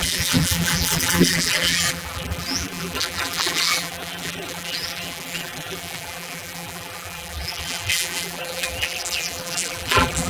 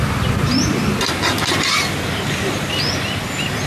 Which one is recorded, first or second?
second